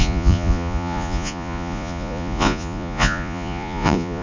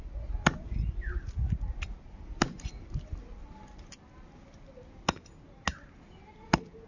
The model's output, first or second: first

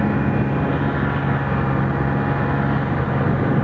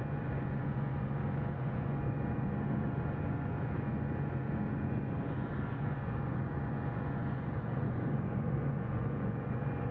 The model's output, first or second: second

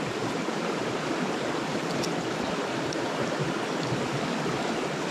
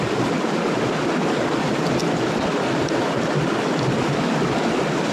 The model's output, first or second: first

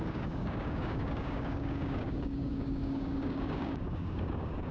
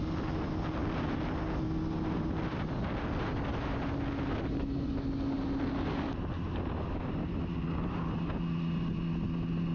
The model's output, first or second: first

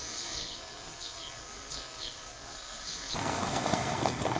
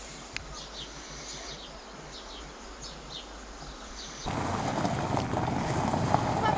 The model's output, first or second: first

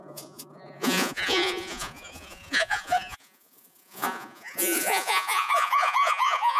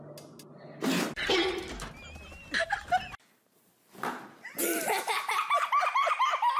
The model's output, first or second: first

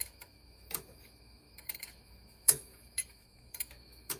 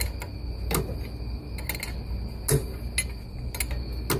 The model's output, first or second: first